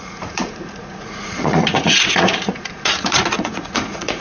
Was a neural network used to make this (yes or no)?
yes